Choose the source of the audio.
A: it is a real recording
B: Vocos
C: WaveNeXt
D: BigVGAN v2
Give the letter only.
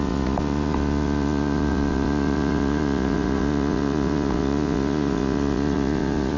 B